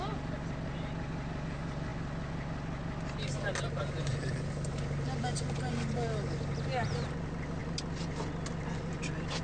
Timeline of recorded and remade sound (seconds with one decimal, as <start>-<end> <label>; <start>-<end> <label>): 0.0-9.4 recorded